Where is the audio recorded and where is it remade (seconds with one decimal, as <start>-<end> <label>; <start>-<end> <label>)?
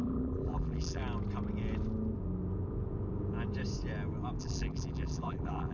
0.0-1.0 remade; 1.0-4.4 recorded; 4.4-5.7 remade